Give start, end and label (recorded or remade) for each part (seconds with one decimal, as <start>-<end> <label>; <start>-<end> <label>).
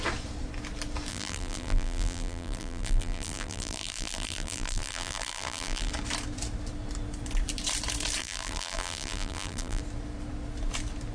0.0-1.1 recorded; 1.1-5.9 remade; 5.9-8.2 recorded; 8.2-9.8 remade; 9.8-11.1 recorded